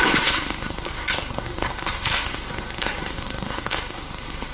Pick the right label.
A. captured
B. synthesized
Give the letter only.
B